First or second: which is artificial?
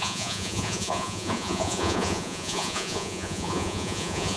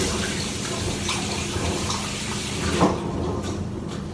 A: first